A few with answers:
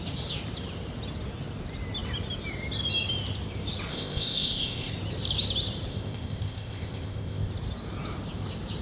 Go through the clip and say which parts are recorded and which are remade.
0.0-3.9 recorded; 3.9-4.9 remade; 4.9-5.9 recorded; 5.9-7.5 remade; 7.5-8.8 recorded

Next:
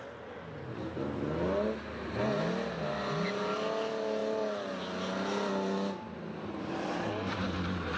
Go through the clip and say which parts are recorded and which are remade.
0.0-8.0 recorded

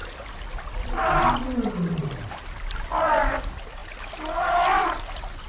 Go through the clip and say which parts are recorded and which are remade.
0.0-5.5 recorded